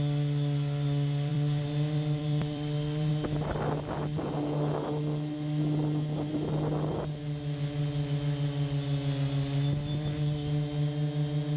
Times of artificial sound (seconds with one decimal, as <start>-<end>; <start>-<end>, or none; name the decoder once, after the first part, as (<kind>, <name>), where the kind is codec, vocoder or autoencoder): 1.3-3.1 (vocoder, BigVGAN v2)